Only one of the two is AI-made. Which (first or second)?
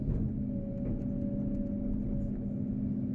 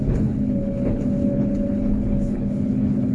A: second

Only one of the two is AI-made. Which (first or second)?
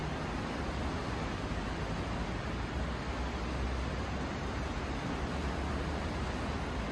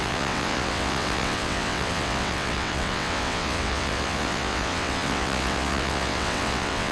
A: second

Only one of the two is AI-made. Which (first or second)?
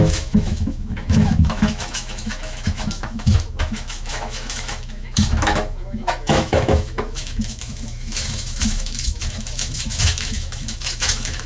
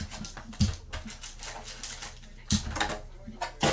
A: first